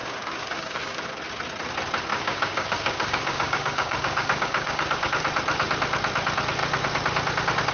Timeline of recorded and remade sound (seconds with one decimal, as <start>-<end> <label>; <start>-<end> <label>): 0.0-1.2 remade; 1.2-2.1 recorded; 2.1-5.1 remade; 5.1-7.7 recorded